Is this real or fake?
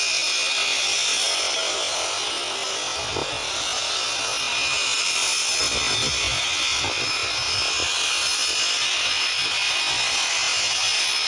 real